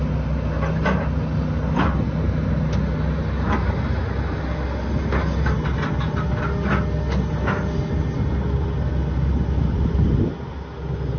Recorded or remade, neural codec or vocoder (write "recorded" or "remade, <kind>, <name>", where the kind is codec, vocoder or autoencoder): recorded